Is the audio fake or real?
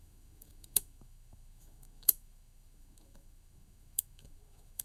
fake